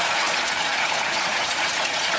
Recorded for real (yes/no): no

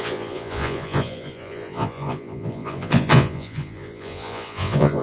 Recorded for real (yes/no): no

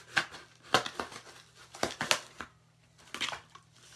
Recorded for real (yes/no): yes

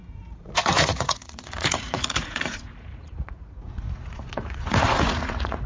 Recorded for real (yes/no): no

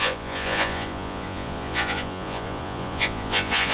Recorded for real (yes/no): no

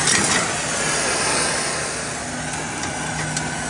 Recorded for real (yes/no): yes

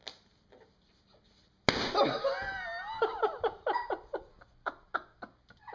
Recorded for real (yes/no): yes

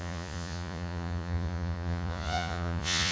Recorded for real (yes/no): no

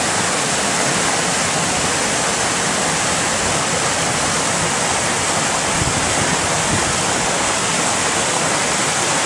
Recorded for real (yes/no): yes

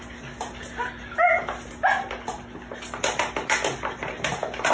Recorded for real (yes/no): yes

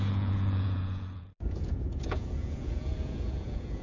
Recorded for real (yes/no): no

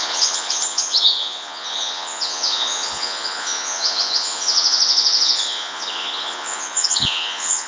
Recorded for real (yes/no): no